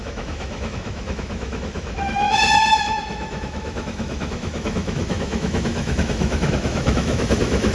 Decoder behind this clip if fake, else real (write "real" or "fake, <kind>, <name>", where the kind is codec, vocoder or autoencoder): fake, autoencoder, DAC-VAE